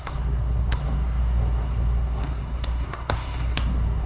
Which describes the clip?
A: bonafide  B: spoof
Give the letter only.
B